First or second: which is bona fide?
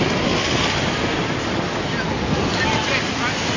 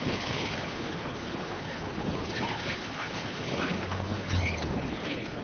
first